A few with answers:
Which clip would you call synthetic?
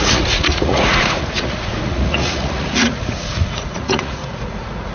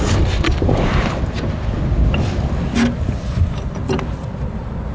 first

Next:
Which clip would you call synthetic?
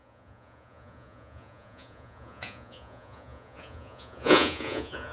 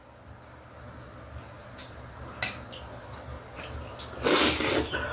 first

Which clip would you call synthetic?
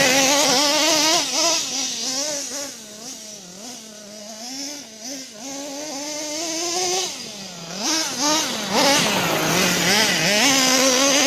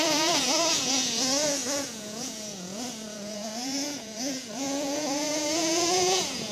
second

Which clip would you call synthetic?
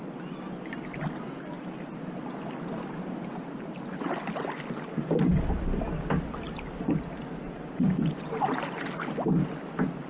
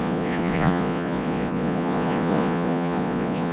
second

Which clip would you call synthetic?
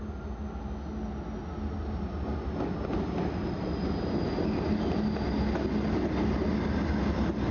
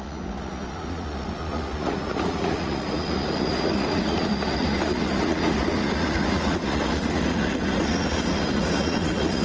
second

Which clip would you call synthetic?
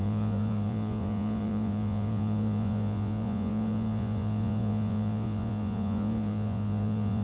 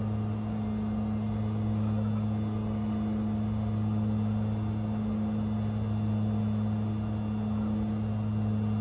first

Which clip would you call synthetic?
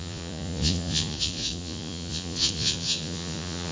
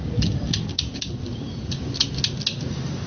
first